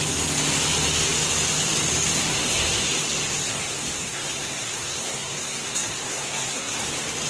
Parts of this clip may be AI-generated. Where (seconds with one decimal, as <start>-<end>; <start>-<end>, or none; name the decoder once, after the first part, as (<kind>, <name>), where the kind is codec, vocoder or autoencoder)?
2.3-2.9 (codec, SNAC); 3.3-6.8